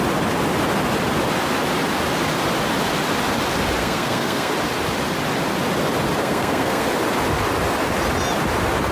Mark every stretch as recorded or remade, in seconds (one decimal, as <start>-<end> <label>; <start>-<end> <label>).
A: 0.0-3.8 recorded; 3.8-4.5 remade; 4.5-6.2 recorded; 6.2-6.9 remade; 6.9-8.9 recorded